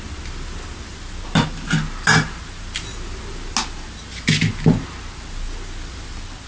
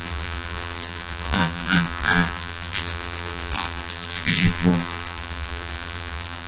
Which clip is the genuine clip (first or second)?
first